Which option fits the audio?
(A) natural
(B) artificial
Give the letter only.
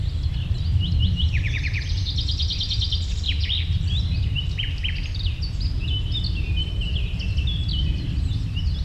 A